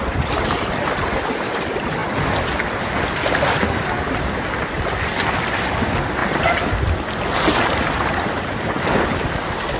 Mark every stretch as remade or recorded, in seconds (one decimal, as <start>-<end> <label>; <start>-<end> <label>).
0.0-9.8 recorded